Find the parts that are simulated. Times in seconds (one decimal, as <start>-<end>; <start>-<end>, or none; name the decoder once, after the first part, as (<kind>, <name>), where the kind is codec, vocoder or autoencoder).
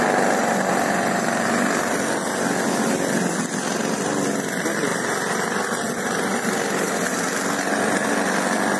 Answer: 0.4-1.9 (vocoder, BigVGAN v2); 4.9-7.2